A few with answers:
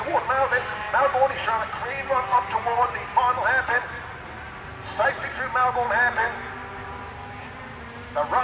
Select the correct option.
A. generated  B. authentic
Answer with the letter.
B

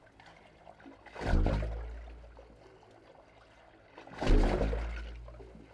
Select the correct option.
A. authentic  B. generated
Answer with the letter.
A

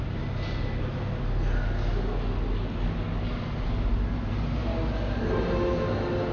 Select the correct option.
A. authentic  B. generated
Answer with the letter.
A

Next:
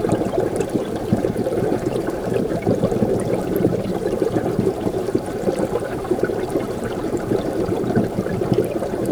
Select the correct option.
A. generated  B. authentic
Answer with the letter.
A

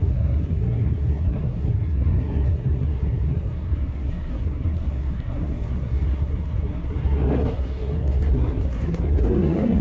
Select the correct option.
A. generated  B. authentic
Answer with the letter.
A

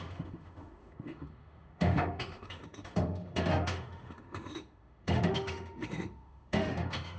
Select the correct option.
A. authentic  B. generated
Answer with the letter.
B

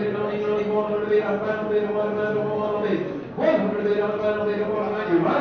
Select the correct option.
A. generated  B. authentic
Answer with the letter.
B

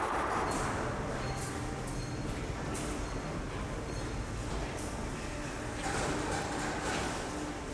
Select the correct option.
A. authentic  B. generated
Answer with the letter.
A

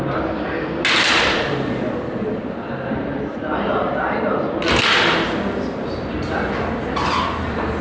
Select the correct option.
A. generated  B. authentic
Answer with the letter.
B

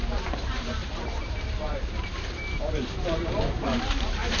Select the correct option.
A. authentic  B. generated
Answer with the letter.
B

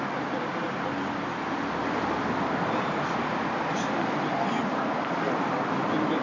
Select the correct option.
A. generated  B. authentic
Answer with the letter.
B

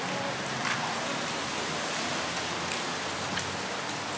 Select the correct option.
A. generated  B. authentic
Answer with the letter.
B